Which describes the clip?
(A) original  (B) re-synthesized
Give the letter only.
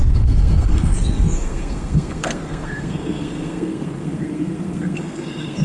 B